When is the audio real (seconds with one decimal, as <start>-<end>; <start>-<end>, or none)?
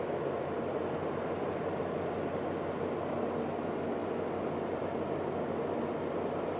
0.0-6.6